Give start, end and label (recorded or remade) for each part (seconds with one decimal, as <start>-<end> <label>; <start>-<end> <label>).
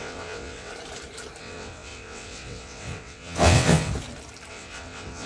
0.0-0.7 remade; 0.7-1.4 recorded; 1.4-3.9 remade; 3.9-4.5 recorded; 4.5-5.3 remade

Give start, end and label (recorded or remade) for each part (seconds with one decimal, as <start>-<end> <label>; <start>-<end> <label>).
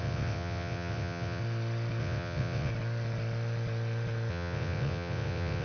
0.0-1.4 remade; 1.4-2.0 recorded; 2.0-2.7 remade; 2.7-4.3 recorded; 4.3-5.6 remade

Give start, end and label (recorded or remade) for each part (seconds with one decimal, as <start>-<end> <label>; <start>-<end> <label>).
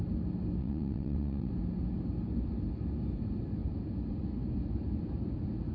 0.0-0.6 recorded; 0.6-1.5 remade; 1.5-5.7 recorded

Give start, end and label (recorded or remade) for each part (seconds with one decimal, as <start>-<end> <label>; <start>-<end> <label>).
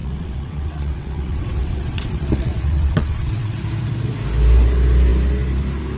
0.0-3.6 remade; 3.6-6.0 recorded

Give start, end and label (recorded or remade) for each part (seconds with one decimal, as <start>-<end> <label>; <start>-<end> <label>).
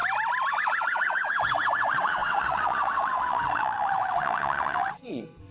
0.0-0.5 recorded; 0.5-5.5 remade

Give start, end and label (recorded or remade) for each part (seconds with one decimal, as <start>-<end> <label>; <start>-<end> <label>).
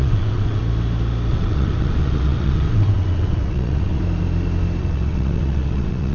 0.0-0.6 remade; 0.6-1.3 recorded; 1.3-4.0 remade; 4.0-4.8 recorded; 4.8-6.1 remade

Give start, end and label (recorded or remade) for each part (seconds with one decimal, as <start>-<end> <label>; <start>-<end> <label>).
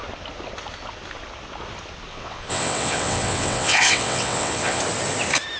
0.0-2.1 recorded; 2.1-4.8 remade; 4.8-5.6 recorded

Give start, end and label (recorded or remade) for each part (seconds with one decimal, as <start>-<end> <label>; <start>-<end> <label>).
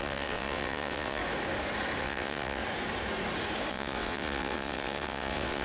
0.0-1.2 remade; 1.2-2.0 recorded; 2.0-2.6 remade; 2.6-3.7 recorded; 3.7-5.6 remade